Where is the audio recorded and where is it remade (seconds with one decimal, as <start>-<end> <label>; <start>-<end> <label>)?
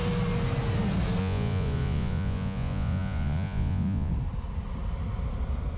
0.0-1.2 recorded; 1.2-4.1 remade; 4.1-5.8 recorded